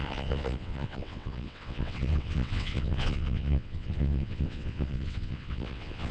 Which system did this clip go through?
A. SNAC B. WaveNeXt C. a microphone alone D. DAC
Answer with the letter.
B